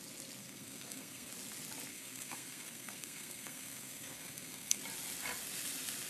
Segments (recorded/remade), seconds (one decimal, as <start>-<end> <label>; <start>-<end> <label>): 0.0-0.4 recorded; 0.4-1.3 remade; 1.3-1.9 recorded; 1.9-4.8 remade; 4.8-6.1 recorded